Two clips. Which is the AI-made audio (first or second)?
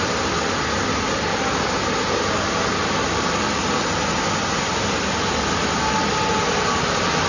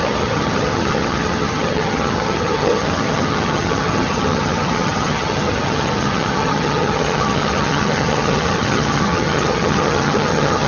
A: second